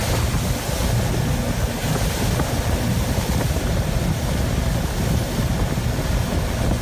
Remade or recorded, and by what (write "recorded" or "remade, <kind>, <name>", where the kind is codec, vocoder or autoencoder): recorded